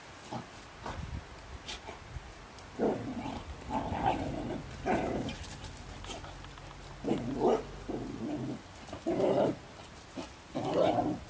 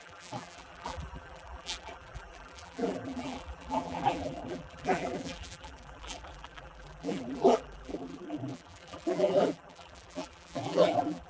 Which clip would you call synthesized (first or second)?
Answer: second